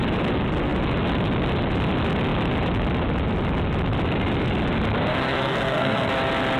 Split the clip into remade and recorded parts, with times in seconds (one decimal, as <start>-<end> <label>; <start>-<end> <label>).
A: 0.0-5.1 recorded; 5.1-6.1 remade; 6.1-6.6 recorded